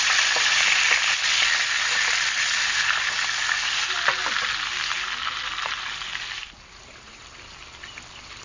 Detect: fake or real real